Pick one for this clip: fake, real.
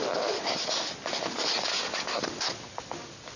real